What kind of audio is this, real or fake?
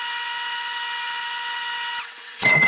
fake